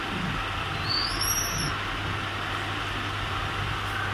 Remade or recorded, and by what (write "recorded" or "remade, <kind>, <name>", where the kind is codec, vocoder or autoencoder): recorded